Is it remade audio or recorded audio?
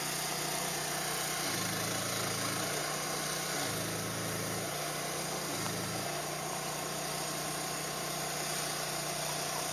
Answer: recorded